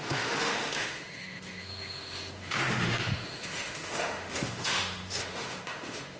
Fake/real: fake